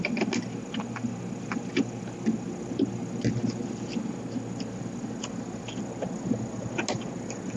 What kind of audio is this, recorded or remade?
recorded